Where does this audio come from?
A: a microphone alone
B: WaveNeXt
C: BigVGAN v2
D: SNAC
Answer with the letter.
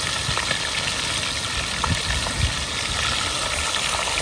A